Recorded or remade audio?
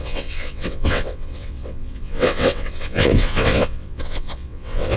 remade